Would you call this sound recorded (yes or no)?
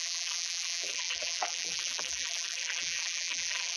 no